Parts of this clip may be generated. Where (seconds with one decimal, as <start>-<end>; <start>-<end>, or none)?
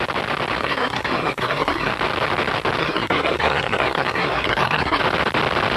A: 0.6-1.9; 2.8-5.0